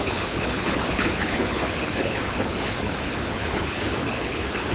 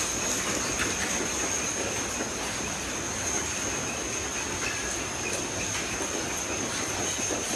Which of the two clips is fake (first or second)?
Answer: first